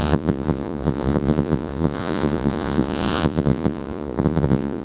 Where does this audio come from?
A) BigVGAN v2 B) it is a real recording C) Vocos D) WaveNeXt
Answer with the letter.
C